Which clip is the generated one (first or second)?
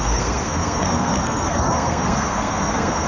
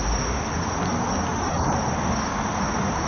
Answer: first